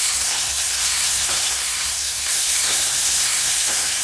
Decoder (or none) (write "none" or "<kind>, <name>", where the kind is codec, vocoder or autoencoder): codec, SNAC